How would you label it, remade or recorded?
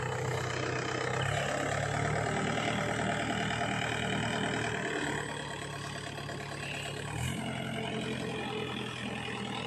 recorded